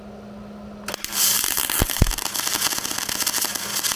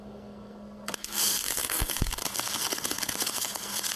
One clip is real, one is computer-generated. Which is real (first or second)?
first